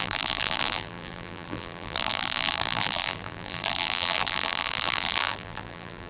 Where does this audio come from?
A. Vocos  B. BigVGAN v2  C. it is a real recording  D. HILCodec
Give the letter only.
B